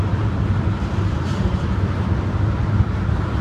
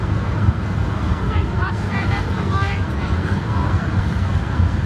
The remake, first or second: second